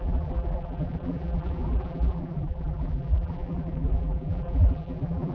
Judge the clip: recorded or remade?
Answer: remade